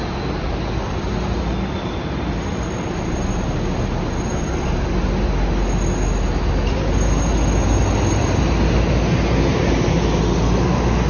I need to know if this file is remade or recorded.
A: recorded